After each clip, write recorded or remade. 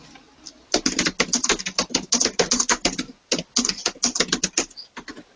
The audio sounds recorded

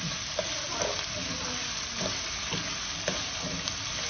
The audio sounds recorded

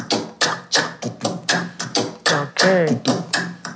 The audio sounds recorded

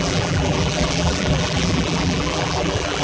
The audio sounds remade